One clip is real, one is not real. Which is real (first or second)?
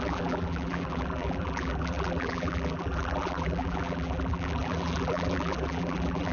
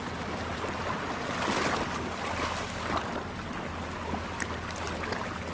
second